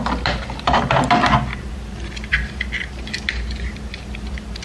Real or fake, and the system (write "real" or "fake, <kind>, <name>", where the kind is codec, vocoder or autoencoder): fake, vocoder, BigVGAN v2